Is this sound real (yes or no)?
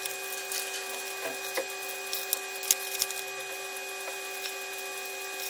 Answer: yes